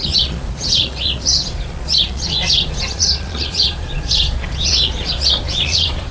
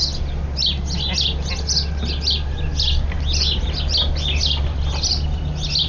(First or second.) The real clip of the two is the second